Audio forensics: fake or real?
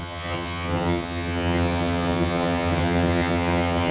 fake